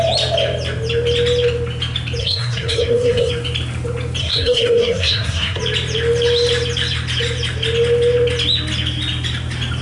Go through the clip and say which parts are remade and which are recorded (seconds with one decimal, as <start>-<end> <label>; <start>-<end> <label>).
0.0-2.2 recorded; 2.2-3.3 remade; 3.3-4.2 recorded; 4.2-5.6 remade; 5.6-9.8 recorded